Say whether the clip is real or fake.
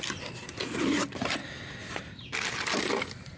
real